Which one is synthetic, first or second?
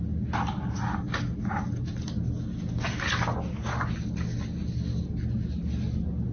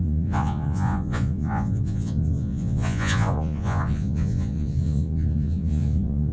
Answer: second